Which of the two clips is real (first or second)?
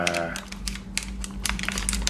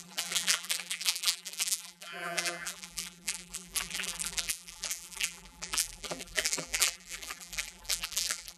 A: first